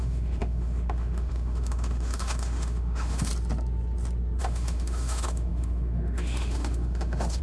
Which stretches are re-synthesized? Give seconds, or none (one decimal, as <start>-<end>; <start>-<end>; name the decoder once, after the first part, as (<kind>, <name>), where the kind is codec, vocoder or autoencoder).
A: 0.0-3.3 (autoencoder, DAC-VAE); 4.4-7.4